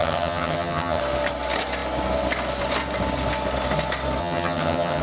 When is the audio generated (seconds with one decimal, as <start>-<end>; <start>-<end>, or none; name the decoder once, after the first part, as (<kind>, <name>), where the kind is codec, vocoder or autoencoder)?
0.0-1.0 (vocoder, HiFi-GAN); 4.2-5.0